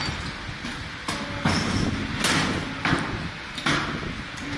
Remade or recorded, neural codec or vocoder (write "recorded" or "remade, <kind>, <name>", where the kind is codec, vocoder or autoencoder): recorded